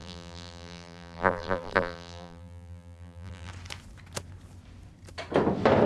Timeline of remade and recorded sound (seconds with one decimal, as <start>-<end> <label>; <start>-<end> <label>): 0.0-3.5 remade; 3.5-5.9 recorded